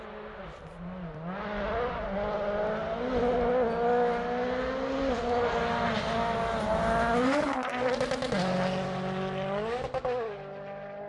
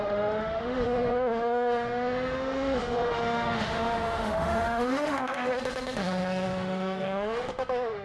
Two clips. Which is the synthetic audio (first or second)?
second